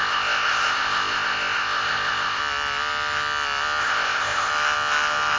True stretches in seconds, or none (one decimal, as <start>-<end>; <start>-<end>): 2.4-3.8; 4.5-5.4